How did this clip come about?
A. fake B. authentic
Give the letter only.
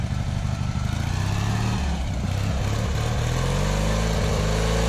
B